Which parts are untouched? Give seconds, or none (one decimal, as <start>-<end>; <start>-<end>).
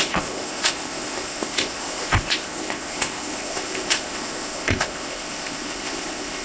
none